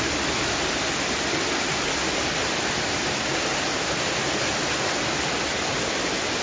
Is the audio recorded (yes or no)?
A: yes